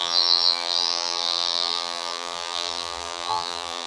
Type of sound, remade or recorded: remade